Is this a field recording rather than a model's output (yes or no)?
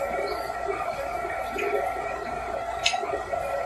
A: no